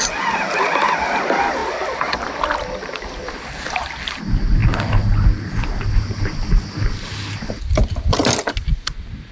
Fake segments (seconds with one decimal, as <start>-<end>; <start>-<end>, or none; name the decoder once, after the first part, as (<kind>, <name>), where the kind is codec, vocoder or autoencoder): none